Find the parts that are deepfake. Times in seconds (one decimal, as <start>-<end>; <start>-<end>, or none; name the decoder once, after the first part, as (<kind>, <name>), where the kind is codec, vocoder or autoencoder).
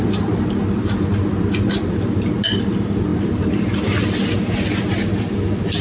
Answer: none